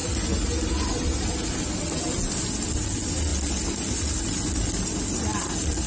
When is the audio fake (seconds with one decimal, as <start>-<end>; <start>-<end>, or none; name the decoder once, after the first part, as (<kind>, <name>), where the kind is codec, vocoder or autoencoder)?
none

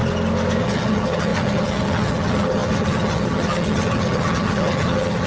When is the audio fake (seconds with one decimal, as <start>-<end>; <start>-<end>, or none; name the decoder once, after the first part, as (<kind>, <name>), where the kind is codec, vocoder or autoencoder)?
0.6-5.3 (vocoder, HiFi-GAN)

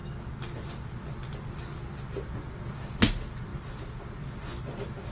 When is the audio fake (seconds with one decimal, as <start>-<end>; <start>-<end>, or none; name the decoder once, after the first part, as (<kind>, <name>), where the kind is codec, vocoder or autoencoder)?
none

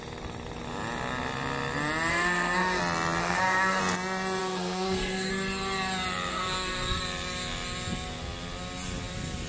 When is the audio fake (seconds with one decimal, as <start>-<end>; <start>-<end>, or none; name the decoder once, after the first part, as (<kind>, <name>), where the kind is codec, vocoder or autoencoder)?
2.1-2.8 (codec, SNAC); 3.2-3.8; 4.4-5.3; 6.3-7.0

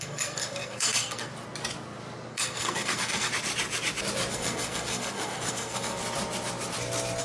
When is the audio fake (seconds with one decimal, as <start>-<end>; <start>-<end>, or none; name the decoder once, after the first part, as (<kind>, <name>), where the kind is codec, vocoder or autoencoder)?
0.0-1.3 (codec, SNAC); 2.3-3.3; 4.3-6.0

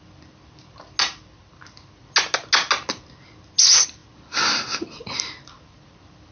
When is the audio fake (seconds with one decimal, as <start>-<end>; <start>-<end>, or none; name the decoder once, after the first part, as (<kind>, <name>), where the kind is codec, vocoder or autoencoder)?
none

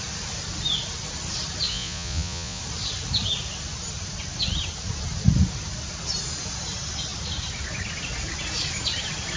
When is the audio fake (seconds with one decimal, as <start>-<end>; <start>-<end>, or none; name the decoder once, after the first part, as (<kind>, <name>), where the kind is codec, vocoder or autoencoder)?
1.7-2.6 (vocoder, Vocos)

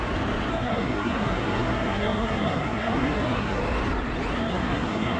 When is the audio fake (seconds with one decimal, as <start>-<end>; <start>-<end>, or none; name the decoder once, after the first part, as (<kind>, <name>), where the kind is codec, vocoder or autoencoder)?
0.5-3.6 (codec, SNAC); 4.5-5.2